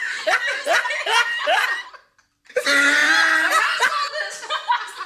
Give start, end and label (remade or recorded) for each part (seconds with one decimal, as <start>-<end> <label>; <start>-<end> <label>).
0.0-5.1 recorded